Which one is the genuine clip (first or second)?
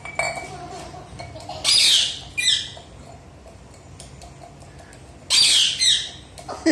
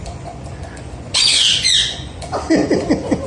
first